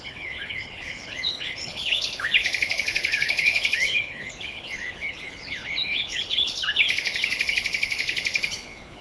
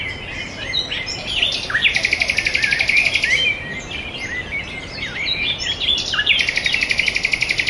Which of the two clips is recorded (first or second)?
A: second